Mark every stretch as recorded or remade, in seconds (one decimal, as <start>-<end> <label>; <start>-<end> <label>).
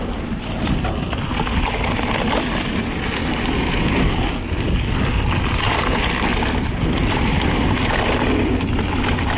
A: 0.0-9.4 recorded